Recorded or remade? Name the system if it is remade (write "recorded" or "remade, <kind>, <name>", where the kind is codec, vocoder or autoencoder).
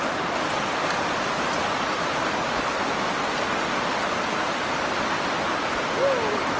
recorded